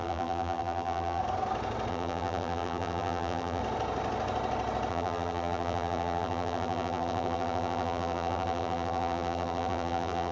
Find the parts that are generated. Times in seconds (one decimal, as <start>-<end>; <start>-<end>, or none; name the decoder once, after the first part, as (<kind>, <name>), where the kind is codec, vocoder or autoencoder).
0.0-1.2 (vocoder, BigVGAN v2); 1.9-3.6; 4.9-10.3